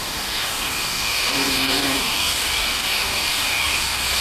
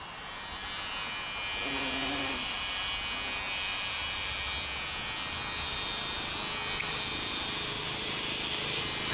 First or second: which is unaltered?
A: second